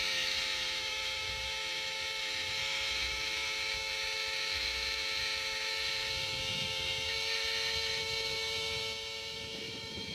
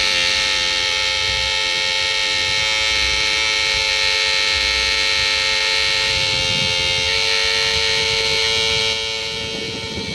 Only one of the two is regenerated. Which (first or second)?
first